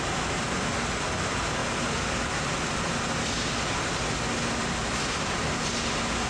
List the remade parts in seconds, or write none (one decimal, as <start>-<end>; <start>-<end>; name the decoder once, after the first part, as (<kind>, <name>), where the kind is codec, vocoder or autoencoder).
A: none